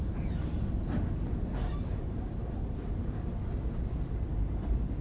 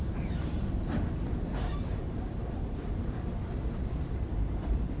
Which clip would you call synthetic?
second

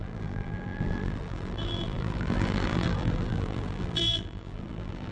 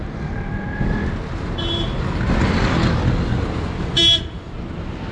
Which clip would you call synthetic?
first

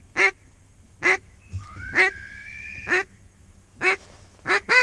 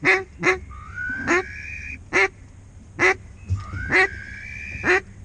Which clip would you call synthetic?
first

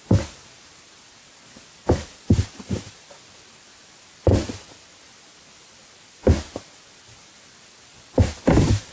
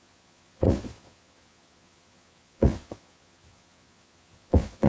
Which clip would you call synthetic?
second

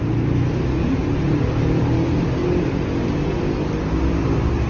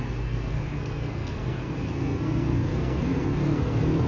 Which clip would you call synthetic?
second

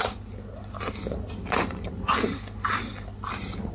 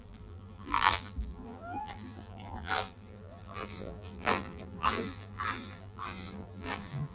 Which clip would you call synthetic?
second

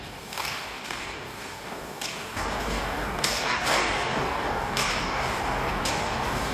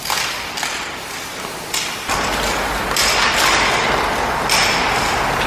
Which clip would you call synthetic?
first